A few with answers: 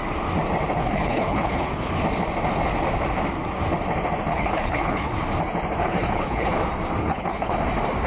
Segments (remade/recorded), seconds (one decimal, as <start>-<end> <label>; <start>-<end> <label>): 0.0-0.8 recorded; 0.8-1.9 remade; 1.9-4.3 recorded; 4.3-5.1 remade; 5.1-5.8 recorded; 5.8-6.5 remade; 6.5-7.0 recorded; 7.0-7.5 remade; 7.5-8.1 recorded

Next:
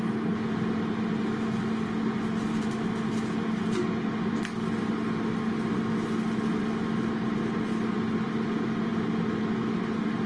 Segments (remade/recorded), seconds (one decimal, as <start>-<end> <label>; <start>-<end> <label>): 0.0-10.3 recorded

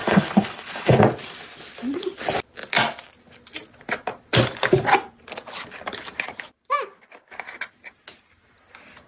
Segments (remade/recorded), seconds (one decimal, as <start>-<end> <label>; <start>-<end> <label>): 0.0-1.0 remade; 1.0-9.1 recorded